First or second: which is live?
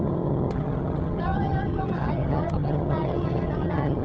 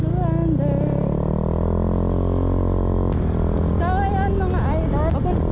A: second